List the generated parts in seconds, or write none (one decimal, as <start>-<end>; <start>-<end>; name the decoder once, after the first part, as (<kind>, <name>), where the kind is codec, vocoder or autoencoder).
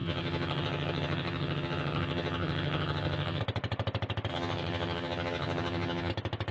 0.0-3.4 (vocoder, HiFi-GAN); 4.3-6.1